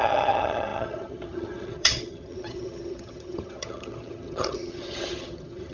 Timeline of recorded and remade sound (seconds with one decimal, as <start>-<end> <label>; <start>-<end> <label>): 0.0-5.7 remade